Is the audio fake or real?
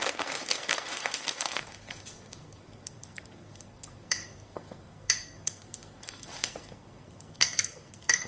fake